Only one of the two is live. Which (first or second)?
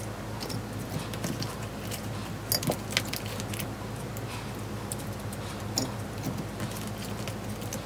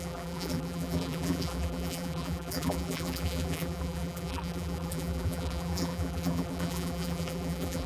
first